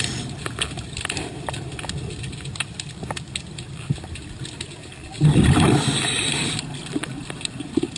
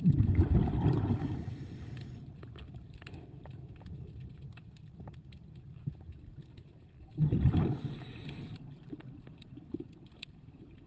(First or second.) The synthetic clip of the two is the second